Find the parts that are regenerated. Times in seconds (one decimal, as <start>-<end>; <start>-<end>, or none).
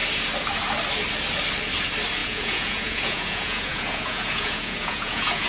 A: 2.2-5.5